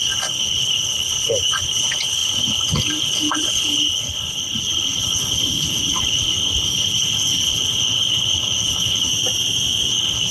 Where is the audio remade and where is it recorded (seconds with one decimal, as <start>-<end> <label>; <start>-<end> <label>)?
0.0-9.1 remade; 9.1-9.9 recorded; 9.9-10.3 remade